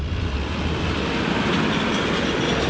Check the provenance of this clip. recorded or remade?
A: recorded